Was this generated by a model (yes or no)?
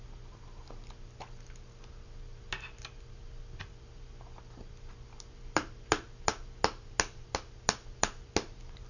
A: no